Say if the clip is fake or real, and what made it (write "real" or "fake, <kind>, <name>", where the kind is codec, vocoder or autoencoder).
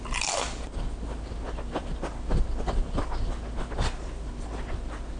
real